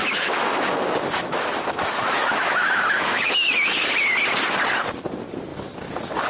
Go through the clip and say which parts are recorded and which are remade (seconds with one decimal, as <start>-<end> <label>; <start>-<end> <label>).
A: 0.0-3.8 remade; 3.8-6.3 recorded